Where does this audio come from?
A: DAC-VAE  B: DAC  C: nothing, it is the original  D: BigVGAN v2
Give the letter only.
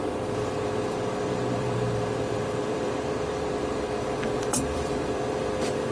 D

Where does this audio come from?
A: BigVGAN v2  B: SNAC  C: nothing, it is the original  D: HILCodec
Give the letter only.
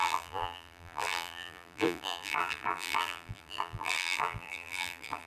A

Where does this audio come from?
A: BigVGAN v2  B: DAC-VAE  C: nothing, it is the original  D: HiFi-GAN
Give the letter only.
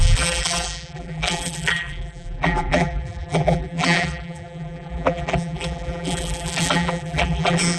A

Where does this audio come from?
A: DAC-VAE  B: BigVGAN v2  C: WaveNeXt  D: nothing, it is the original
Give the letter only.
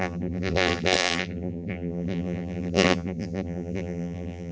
B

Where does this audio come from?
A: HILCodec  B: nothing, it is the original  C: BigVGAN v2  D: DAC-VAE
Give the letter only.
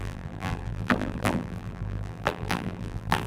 C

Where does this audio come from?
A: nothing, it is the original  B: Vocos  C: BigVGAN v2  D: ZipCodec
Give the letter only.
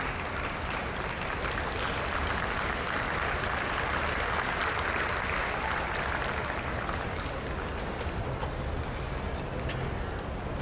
A